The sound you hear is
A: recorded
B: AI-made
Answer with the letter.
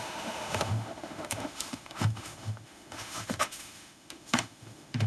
B